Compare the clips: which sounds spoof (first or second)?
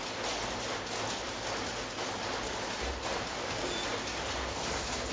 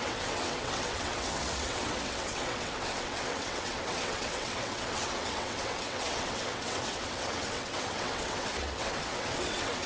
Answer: second